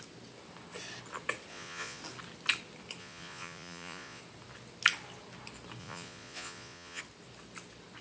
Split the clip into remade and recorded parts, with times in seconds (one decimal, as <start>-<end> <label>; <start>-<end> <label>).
0.0-1.5 recorded; 1.5-2.0 remade; 2.0-3.0 recorded; 3.0-4.2 remade; 4.2-5.8 recorded; 5.8-7.0 remade; 7.0-8.0 recorded